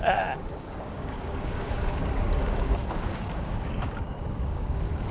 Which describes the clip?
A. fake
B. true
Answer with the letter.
A